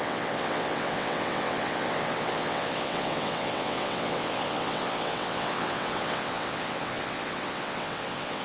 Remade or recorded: remade